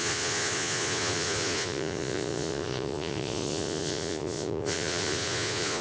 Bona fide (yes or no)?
no